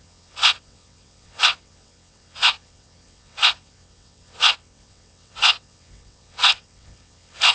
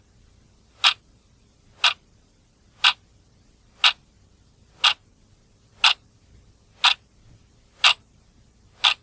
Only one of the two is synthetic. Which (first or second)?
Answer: first